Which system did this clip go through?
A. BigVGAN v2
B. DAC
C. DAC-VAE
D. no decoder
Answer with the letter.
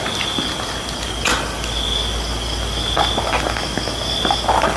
D